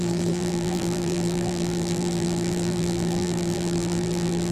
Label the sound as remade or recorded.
remade